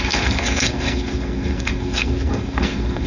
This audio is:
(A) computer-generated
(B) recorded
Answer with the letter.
A